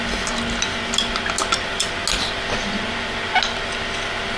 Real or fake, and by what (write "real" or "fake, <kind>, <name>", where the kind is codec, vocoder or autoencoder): real